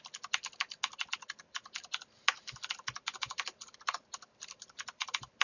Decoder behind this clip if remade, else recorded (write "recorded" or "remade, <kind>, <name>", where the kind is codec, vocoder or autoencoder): recorded